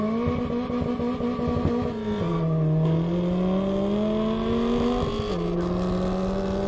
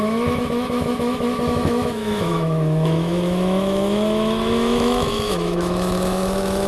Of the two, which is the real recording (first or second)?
first